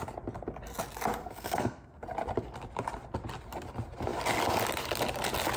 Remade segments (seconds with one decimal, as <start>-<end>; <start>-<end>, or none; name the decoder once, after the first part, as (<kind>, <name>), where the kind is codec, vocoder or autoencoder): 1.2-2.0 (codec, SNAC)